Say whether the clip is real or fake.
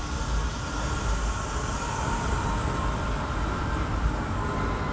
real